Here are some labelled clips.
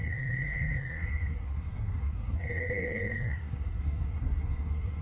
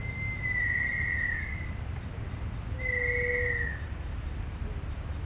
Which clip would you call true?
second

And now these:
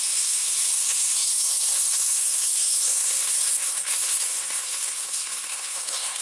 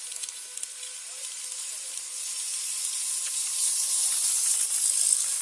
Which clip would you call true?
second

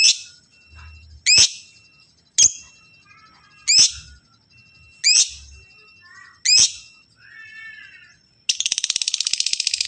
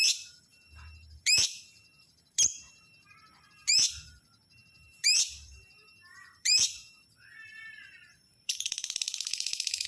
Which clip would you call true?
first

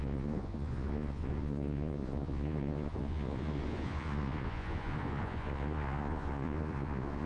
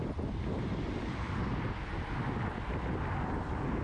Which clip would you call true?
second